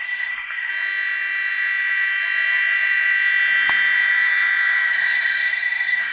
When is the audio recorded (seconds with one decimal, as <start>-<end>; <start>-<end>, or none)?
0.7-4.9